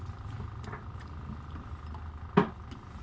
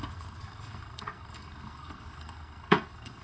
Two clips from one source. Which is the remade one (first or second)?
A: second